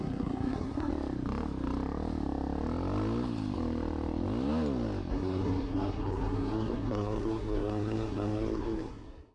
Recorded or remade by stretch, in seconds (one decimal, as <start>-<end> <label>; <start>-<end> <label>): 0.0-0.9 remade; 0.9-5.1 recorded; 5.1-9.3 remade